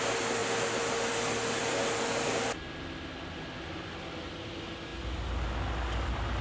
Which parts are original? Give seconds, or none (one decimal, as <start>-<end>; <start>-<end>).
0.0-6.4